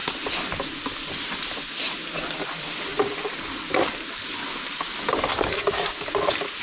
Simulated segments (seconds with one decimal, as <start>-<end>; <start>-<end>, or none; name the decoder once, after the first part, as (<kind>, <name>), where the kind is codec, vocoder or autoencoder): none